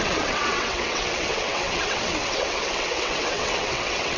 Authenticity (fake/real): fake